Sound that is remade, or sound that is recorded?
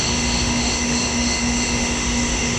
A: remade